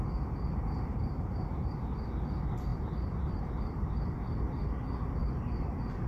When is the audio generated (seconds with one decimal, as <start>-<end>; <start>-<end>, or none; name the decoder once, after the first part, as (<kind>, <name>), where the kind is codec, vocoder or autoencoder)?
0.9-2.1 (vocoder, BigVGAN v2); 2.7-4.5; 5.2-6.1